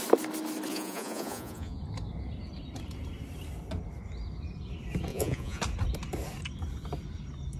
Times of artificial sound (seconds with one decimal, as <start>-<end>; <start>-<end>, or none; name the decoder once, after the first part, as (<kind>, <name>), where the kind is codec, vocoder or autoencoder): 0.7-1.8 (vocoder, Vocos); 5.1-5.6